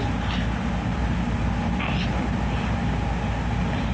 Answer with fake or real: real